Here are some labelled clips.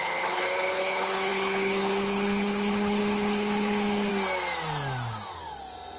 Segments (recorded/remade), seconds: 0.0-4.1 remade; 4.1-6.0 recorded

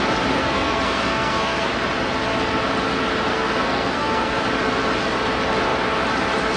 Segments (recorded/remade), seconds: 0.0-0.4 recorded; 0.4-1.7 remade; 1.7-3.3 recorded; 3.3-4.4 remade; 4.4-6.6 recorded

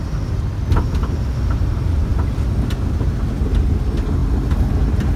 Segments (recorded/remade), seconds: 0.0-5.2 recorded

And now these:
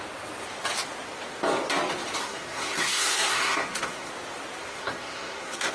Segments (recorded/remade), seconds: 0.0-2.2 recorded; 2.2-4.1 remade; 4.1-4.7 recorded; 4.7-5.7 remade

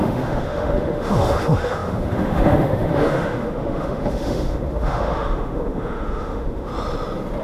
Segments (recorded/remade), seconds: 0.0-6.7 remade; 6.7-7.4 recorded

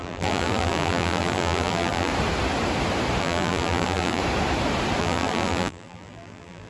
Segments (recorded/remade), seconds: 0.0-2.1 remade; 2.1-3.2 recorded; 3.2-4.2 remade; 4.2-5.0 recorded; 5.0-6.7 remade

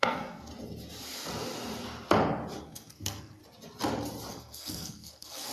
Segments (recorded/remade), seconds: 0.0-0.5 remade; 0.5-2.6 recorded; 2.6-3.4 remade; 3.4-4.3 recorded; 4.3-5.5 remade

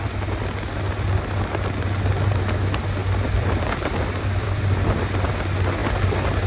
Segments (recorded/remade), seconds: 0.0-3.0 recorded; 3.0-5.3 remade; 5.3-6.5 recorded